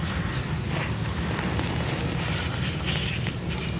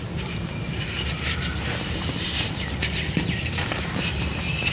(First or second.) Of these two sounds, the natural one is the first